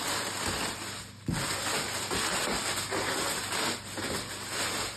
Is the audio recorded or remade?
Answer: recorded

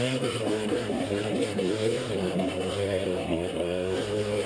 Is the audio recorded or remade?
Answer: remade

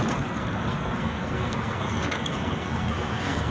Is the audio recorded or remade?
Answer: remade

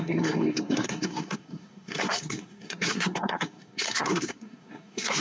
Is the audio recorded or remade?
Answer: remade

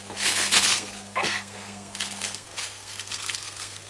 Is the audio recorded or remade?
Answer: remade